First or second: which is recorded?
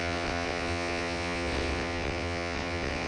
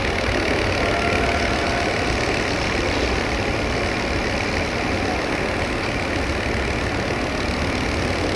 second